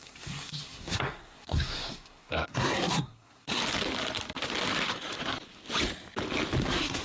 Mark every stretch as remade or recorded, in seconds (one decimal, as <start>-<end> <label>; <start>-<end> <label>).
0.0-3.6 remade; 3.6-6.6 recorded; 6.6-7.0 remade